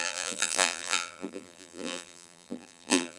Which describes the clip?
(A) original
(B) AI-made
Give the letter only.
B